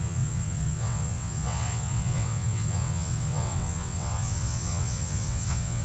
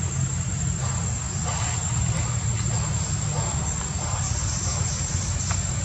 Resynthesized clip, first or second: first